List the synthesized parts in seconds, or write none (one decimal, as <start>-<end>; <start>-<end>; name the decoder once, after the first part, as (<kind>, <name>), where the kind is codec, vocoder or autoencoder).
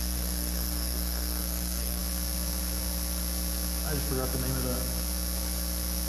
0.0-2.0 (codec, SNAC)